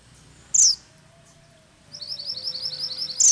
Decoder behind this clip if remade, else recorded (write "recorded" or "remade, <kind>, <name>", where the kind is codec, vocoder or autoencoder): recorded